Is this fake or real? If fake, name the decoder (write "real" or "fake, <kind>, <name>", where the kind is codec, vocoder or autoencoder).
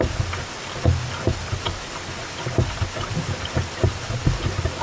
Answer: real